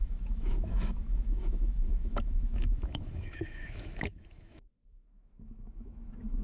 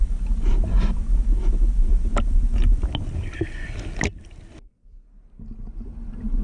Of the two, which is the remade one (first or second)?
first